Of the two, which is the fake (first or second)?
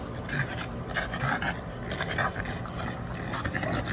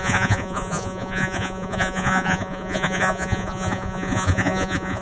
second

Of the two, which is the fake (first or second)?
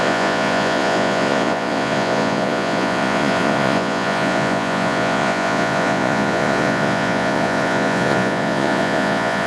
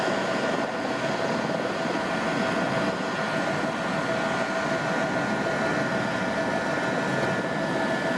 first